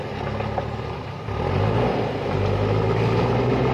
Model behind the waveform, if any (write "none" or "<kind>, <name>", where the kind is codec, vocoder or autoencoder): none